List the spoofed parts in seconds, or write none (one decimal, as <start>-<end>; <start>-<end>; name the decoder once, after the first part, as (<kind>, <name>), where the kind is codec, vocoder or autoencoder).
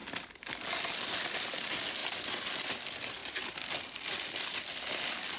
none